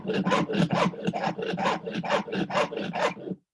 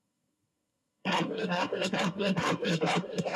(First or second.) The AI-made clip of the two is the second